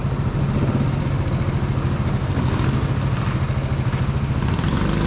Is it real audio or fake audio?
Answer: real